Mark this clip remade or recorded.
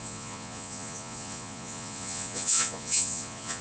remade